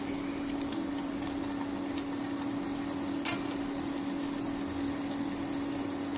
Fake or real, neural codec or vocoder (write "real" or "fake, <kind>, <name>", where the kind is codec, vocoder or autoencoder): real